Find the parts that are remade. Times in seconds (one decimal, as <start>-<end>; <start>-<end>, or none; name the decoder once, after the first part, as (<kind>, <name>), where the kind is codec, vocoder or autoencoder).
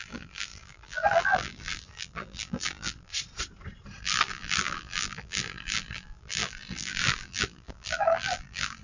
0.0-3.1 (vocoder, BigVGAN v2); 4.0-8.8